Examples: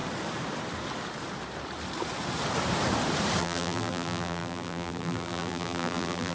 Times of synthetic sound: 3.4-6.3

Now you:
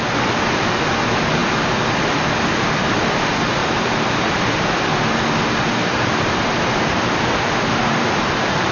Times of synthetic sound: 3.6-4.5; 5.8-8.7

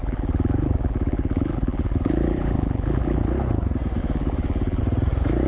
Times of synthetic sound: 0.0-3.2; 4.0-4.8

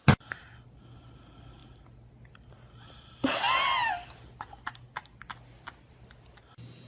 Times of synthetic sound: none

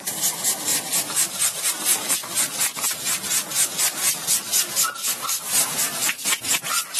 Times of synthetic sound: 0.7-1.7; 2.2-6.4